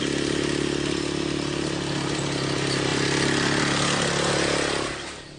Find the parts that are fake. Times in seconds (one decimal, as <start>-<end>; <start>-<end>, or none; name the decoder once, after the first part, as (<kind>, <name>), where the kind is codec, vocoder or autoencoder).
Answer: none